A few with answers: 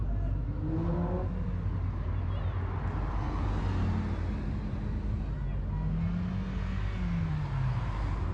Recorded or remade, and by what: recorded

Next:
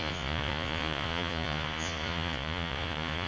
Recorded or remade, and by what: remade, vocoder, Vocos